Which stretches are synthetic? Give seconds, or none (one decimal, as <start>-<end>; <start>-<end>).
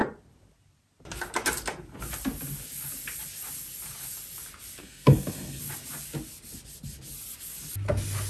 4.8-5.6